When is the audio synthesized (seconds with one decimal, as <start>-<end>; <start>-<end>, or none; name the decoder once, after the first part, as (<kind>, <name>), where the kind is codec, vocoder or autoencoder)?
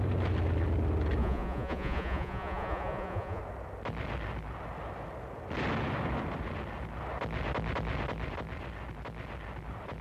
1.2-3.4 (vocoder, Vocos)